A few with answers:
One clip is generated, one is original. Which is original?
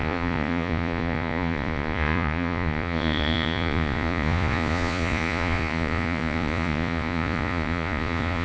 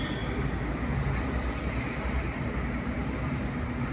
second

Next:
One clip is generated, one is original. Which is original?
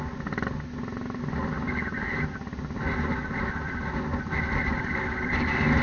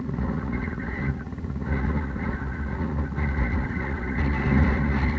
first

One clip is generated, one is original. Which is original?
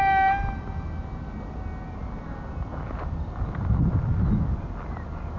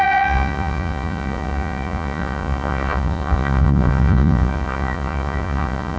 first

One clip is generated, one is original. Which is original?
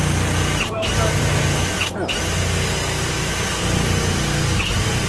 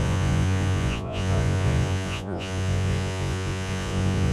first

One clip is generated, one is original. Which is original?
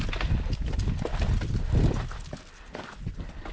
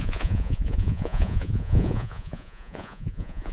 first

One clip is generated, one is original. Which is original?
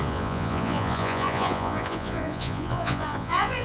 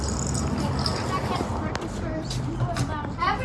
second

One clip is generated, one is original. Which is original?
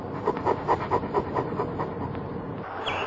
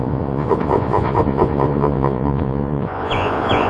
first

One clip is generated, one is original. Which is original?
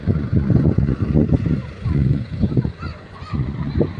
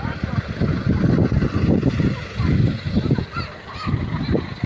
second